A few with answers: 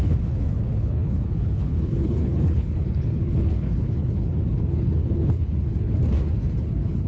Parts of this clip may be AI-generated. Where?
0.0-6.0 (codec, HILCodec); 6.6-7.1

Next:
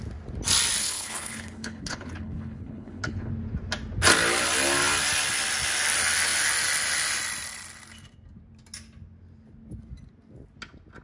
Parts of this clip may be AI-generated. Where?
0.8-3.3 (codec, HILCodec)

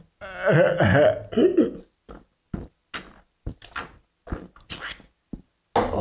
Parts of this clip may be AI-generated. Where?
none